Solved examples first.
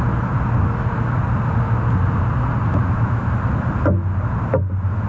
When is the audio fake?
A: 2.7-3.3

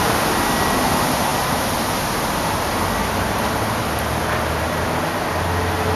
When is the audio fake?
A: none